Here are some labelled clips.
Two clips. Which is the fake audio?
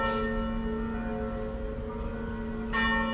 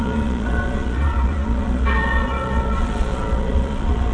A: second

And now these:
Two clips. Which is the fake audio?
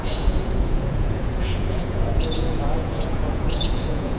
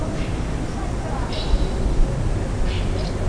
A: first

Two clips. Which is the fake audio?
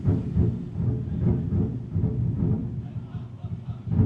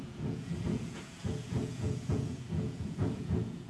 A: second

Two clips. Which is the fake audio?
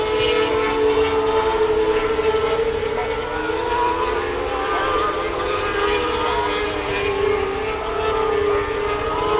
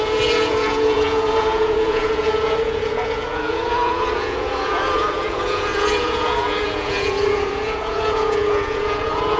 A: second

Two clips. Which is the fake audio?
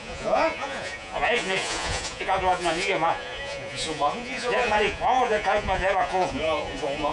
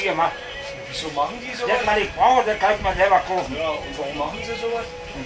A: first